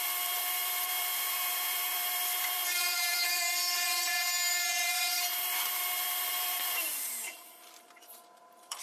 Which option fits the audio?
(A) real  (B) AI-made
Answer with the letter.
B